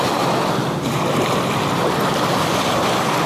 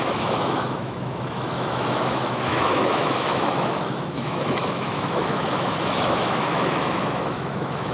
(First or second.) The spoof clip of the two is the second